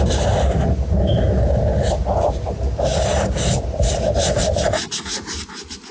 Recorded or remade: recorded